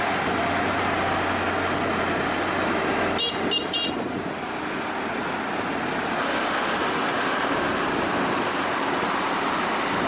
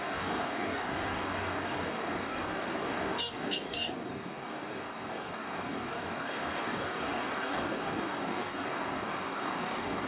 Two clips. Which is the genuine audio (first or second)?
first